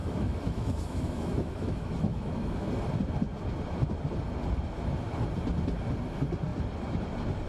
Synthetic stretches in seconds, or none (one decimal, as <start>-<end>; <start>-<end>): 0.0-2.7